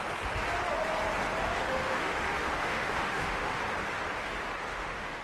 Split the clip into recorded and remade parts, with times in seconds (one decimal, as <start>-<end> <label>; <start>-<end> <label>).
0.0-1.4 recorded; 1.4-3.6 remade; 3.6-4.7 recorded; 4.7-5.2 remade